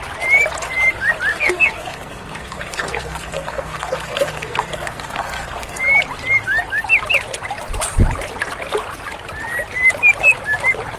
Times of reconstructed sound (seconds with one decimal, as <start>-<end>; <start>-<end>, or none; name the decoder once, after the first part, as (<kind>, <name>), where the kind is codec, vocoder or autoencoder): 1.3-5.8 (codec, SNAC)